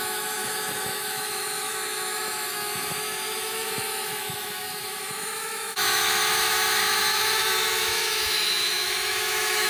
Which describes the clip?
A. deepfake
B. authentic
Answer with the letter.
A